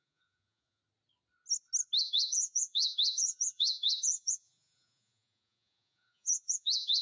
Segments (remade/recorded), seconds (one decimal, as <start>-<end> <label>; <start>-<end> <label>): 0.0-0.8 remade; 0.8-2.0 recorded; 2.0-7.0 remade